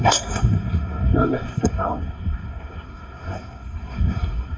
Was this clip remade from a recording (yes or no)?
yes